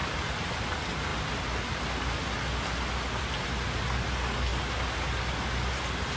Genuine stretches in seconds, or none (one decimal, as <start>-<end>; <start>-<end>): 0.0-6.2

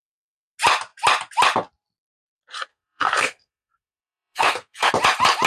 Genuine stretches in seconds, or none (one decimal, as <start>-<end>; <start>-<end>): 0.0-2.7; 4.9-5.5

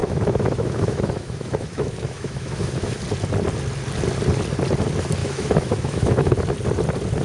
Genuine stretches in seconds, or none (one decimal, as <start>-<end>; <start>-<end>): 3.0-5.2; 6.3-7.2